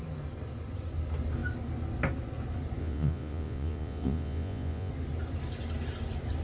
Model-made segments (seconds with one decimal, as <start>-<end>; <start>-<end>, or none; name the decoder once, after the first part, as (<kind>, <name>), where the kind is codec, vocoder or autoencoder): 2.8-4.9 (vocoder, Vocos)